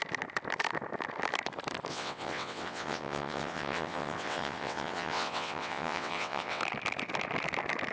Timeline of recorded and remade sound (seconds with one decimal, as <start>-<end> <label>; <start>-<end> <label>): 0.0-1.9 recorded; 1.9-6.6 remade; 6.6-7.9 recorded